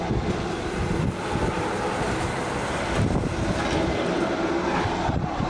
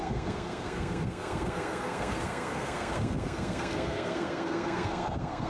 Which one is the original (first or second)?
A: first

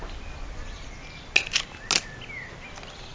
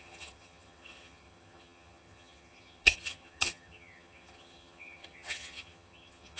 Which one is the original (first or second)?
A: first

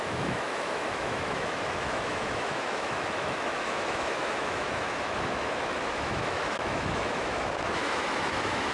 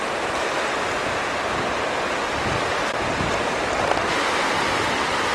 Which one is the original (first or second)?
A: second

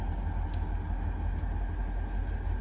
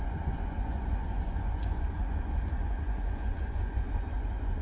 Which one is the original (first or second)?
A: first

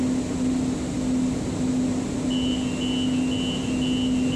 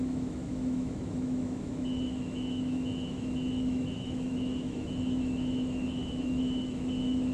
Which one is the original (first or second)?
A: first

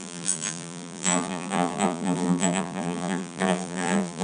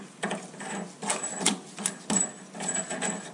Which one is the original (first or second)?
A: second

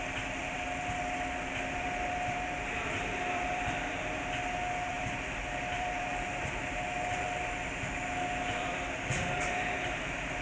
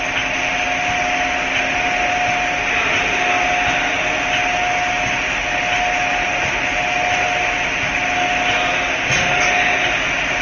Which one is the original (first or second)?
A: second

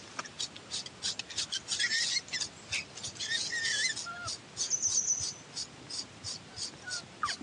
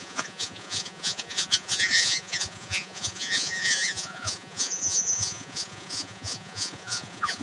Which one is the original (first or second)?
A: first